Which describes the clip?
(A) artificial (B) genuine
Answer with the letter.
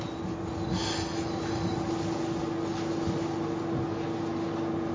B